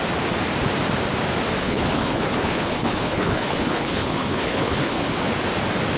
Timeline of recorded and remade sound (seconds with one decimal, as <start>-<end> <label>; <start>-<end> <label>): 0.0-1.6 recorded; 1.6-5.2 remade; 5.2-6.0 recorded